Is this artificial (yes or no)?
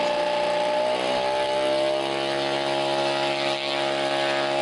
no